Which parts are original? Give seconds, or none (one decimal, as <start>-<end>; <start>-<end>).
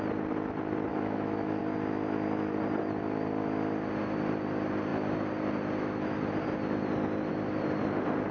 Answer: 0.0-0.9; 1.6-8.3